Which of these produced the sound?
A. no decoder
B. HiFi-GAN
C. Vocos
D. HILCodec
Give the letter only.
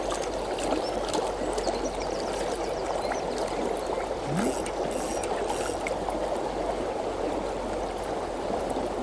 A